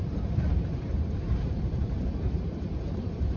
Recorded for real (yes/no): no